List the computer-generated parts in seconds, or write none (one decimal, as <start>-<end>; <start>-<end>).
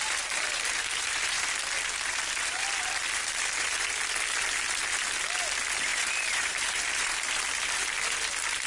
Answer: 0.0-1.4; 5.9-7.4